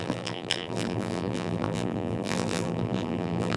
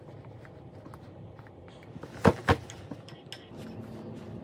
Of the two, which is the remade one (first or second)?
first